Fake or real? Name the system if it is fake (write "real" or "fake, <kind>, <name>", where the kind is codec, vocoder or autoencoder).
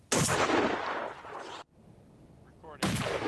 real